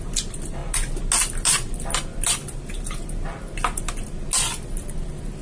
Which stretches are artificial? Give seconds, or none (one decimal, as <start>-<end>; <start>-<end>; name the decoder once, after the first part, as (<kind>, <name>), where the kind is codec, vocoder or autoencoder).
none

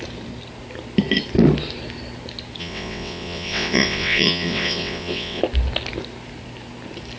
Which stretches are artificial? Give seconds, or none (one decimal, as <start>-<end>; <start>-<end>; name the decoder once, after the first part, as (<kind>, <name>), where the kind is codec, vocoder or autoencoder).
2.6-5.4 (vocoder, WaveNeXt)